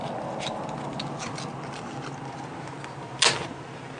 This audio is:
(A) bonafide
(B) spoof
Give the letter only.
A